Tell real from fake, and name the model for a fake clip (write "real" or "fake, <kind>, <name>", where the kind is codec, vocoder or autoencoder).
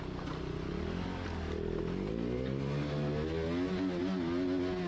real